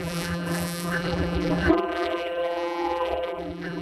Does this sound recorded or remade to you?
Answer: remade